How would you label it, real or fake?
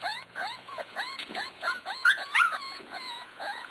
fake